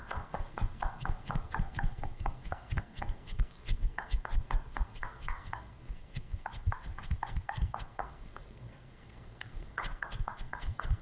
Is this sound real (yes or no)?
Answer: no